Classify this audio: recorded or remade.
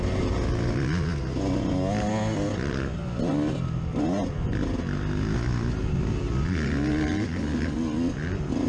recorded